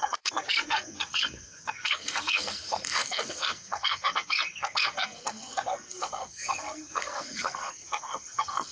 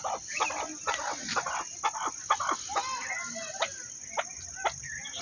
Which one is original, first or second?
second